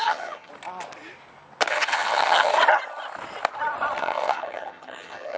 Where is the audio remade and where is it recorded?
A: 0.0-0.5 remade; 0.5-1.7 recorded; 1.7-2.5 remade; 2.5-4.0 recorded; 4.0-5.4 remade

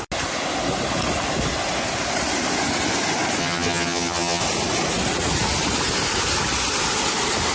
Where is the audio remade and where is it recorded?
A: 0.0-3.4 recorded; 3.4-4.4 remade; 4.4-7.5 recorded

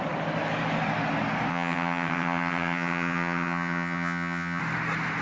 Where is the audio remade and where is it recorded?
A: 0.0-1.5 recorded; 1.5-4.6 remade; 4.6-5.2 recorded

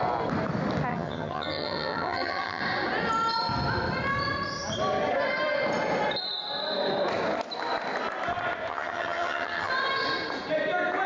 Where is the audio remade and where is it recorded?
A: 0.0-0.9 recorded; 0.9-2.6 remade; 2.6-8.7 recorded; 8.7-9.7 remade; 9.7-11.1 recorded

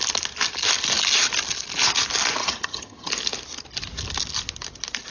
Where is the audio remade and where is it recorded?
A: 0.0-2.4 recorded; 2.4-3.1 remade; 3.1-5.1 recorded

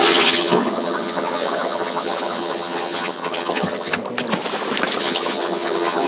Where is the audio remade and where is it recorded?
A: 0.0-4.0 remade; 4.0-5.0 recorded; 5.0-6.1 remade